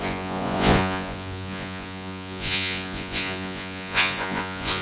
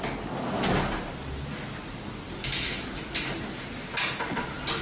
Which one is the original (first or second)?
second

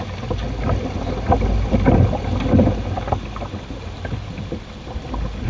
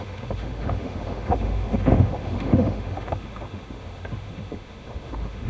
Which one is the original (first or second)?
first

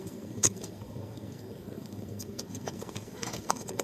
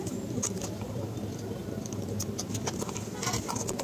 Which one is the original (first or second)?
second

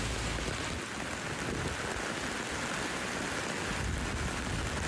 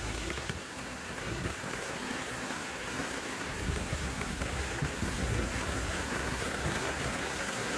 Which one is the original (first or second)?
first